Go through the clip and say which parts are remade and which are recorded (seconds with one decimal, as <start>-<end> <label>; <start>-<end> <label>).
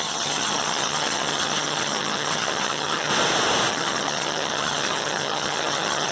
0.0-3.1 remade; 3.1-3.7 recorded; 3.7-6.1 remade